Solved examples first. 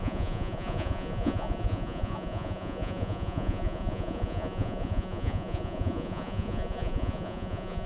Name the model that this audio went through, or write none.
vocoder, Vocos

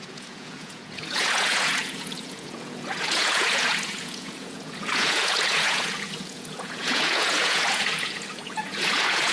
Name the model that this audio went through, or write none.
vocoder, Vocos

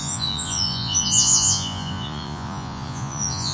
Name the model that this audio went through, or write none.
vocoder, Vocos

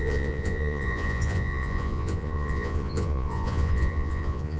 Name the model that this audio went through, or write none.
vocoder, Vocos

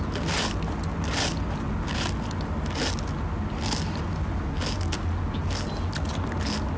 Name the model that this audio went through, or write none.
none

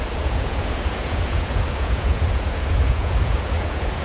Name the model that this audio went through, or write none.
vocoder, Vocos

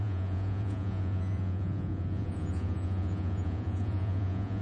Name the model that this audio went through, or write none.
vocoder, Vocos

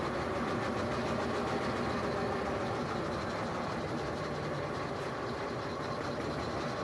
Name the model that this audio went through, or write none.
none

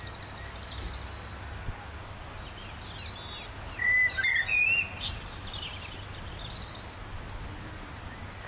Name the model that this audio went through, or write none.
none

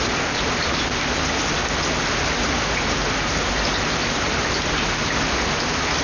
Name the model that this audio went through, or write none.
none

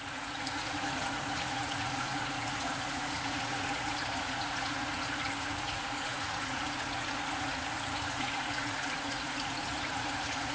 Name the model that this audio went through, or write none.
vocoder, Vocos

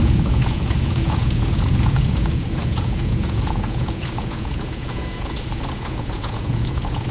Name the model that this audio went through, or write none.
vocoder, Vocos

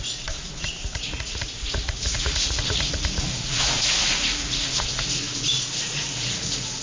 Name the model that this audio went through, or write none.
vocoder, Vocos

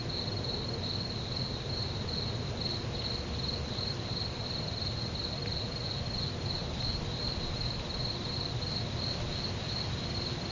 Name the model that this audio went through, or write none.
none